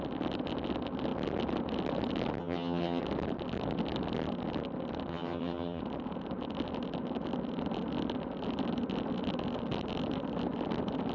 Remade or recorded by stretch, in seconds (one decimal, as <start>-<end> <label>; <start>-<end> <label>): 0.0-2.4 recorded; 2.4-3.0 remade; 3.0-5.1 recorded; 5.1-5.8 remade; 5.8-11.1 recorded

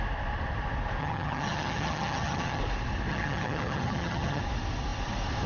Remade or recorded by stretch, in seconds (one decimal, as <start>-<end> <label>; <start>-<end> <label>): 0.0-1.0 recorded; 1.0-2.6 remade; 2.6-3.1 recorded; 3.1-4.4 remade; 4.4-5.5 recorded

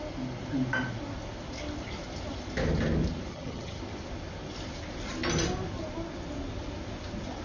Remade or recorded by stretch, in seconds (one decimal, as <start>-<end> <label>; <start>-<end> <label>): 0.0-3.3 recorded; 3.3-3.8 remade; 3.8-7.4 recorded

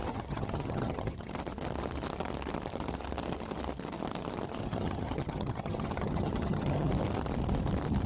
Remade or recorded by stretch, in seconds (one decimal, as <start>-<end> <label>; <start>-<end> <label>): 0.0-1.3 remade; 1.3-4.6 recorded; 4.6-6.9 remade; 6.9-8.1 recorded

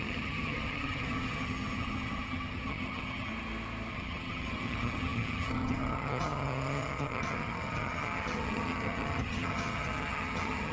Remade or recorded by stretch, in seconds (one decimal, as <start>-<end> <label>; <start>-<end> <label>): 0.0-3.3 remade; 3.3-3.9 recorded; 3.9-10.7 remade

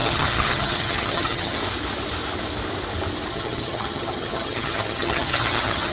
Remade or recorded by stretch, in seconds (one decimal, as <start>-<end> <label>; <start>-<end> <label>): 0.0-1.6 remade; 1.6-3.3 recorded; 3.3-5.9 remade